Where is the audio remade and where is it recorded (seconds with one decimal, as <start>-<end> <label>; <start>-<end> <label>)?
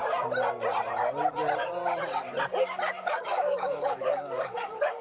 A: 0.0-3.0 recorded; 3.0-5.0 remade